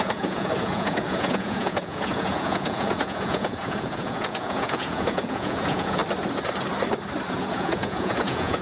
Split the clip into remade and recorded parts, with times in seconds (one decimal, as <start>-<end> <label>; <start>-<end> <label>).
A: 0.0-6.0 remade; 6.0-7.3 recorded; 7.3-8.6 remade